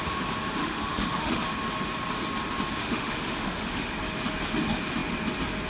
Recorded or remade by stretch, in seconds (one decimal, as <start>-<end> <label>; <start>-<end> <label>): 0.0-0.6 recorded; 0.6-1.4 remade; 1.4-2.8 recorded; 2.8-3.9 remade; 3.9-5.7 recorded